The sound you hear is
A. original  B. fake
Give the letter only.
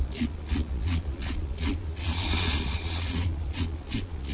B